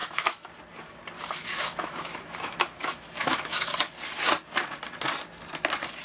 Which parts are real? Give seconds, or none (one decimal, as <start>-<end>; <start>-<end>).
0.5-1.2; 3.7-6.0